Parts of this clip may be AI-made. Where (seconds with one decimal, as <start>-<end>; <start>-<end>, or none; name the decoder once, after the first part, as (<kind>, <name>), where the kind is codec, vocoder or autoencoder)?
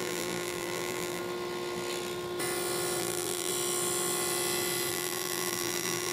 0.0-1.2 (vocoder, BigVGAN v2); 3.0-3.5; 4.9-6.1